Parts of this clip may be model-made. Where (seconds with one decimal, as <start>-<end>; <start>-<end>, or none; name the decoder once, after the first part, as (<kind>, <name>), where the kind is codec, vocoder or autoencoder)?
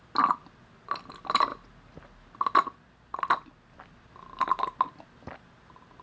none